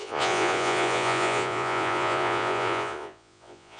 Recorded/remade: remade